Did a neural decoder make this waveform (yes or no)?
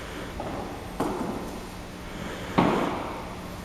no